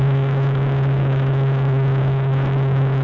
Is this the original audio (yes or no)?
no